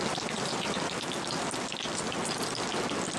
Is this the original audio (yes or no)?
yes